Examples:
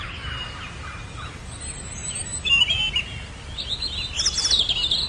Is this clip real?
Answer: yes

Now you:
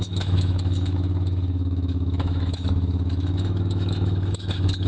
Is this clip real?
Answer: no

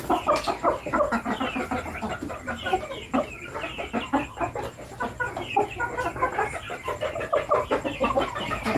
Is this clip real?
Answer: yes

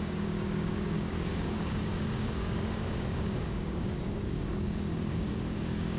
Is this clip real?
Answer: no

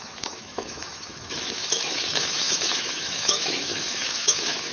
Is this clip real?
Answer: no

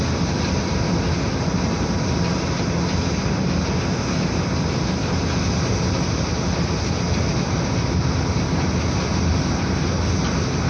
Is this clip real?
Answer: yes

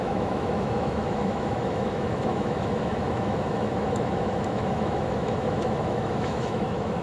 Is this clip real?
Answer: no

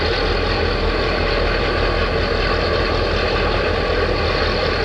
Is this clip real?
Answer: yes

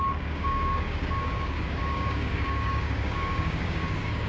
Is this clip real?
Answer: no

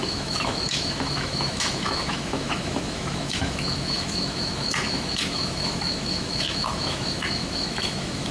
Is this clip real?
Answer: no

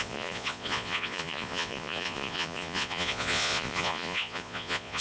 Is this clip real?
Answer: no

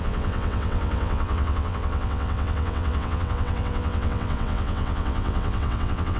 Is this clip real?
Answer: no